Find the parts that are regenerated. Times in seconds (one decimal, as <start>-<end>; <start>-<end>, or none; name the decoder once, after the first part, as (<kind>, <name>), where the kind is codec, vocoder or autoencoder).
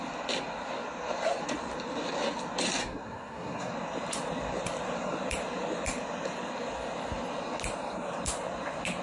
2.8-3.7 (codec, SNAC)